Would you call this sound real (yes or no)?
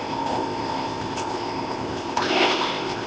no